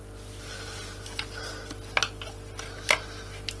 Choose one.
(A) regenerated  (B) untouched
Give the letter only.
B